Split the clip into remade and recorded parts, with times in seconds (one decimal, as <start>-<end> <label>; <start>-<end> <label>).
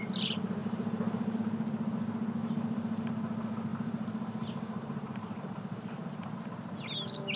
0.0-0.6 recorded; 0.6-1.4 remade; 1.4-2.4 recorded; 2.4-3.1 remade; 3.1-3.7 recorded; 3.7-6.5 remade; 6.5-7.4 recorded